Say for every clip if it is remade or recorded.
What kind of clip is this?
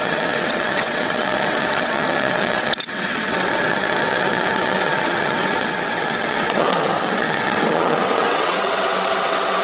remade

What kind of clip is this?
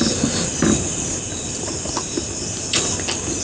recorded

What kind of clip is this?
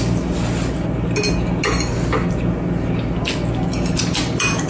recorded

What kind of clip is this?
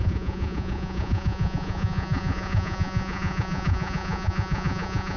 remade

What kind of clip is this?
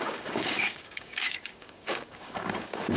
remade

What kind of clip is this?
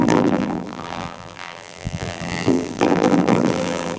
remade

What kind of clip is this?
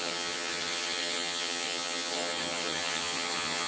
remade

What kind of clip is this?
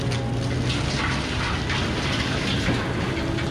recorded